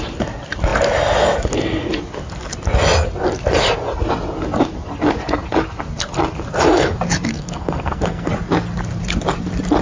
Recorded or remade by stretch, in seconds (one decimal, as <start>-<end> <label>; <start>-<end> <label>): 0.0-7.3 recorded; 7.3-8.3 remade; 8.3-9.8 recorded